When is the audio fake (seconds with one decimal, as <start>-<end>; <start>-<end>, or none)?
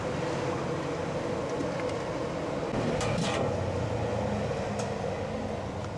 none